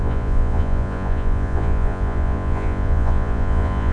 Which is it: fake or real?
fake